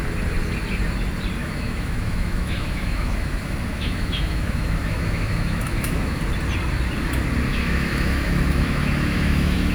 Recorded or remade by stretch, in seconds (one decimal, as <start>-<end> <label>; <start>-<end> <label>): 0.0-1.4 recorded; 1.4-6.2 remade; 6.2-7.5 recorded; 7.5-9.7 remade